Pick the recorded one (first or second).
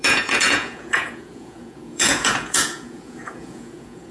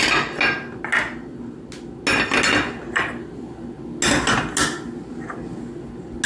second